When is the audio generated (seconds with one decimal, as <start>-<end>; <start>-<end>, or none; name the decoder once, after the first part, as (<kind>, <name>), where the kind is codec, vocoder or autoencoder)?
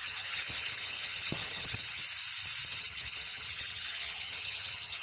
0.0-2.0 (vocoder, HiFi-GAN); 2.7-5.0